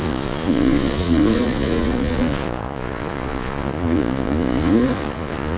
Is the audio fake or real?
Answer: fake